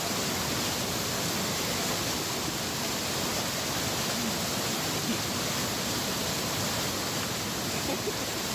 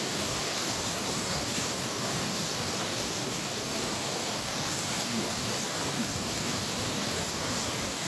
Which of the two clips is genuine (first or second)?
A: first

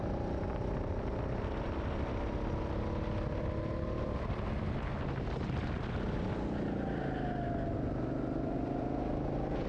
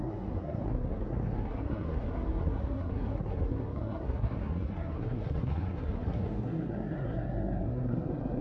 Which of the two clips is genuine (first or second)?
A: first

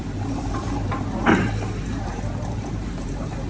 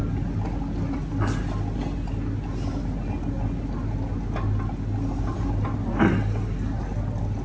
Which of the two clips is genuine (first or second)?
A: second